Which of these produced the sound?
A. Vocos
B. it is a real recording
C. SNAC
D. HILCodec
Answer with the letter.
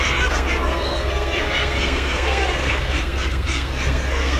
C